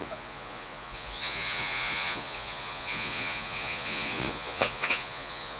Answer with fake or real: fake